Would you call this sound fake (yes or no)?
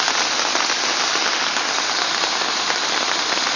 no